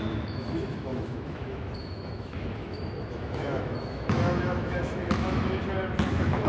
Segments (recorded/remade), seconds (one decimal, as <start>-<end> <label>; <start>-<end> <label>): 0.0-5.6 remade; 5.6-6.1 recorded; 6.1-6.5 remade